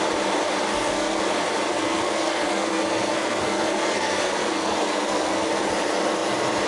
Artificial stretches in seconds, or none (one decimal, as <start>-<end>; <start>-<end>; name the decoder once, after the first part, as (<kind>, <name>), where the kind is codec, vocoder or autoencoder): 0.7-1.2 (codec, SNAC); 1.7-5.7